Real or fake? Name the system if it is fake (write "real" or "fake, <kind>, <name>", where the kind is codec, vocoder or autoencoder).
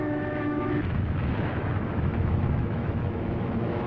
fake, autoencoder, DAC-VAE